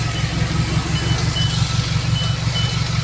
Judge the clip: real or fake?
real